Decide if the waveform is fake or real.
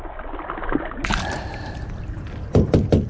real